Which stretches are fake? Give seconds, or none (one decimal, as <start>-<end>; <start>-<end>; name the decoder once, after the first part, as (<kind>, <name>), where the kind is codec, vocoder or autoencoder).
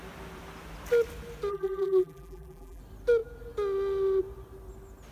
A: 1.5-2.8 (vocoder, BigVGAN v2)